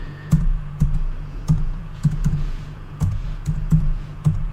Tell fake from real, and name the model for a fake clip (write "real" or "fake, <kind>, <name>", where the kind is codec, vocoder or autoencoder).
fake, vocoder, Vocos